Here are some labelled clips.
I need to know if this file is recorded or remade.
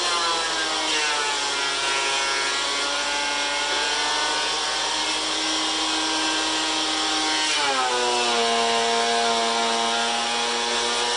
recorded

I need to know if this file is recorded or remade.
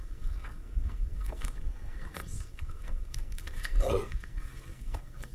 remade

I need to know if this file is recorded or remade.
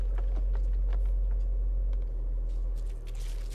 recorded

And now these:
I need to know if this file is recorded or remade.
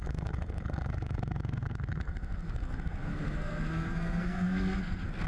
remade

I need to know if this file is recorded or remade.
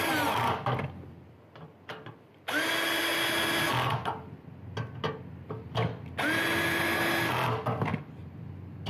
recorded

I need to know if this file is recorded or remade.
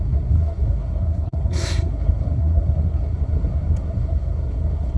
remade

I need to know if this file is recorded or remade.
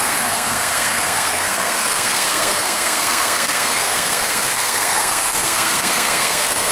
remade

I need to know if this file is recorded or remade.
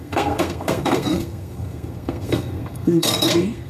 remade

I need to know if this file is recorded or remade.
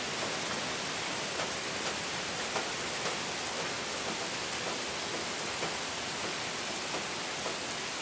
recorded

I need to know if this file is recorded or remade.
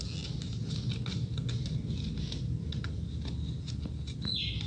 recorded